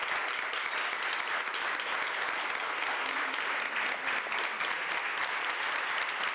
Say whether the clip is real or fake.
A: real